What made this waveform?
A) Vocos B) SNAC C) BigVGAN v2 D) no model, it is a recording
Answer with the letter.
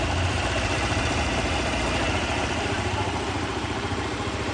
C